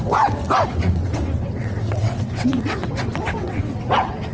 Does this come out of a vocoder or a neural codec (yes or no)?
yes